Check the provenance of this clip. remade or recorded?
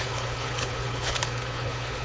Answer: remade